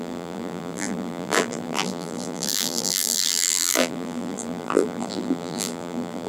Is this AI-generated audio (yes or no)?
yes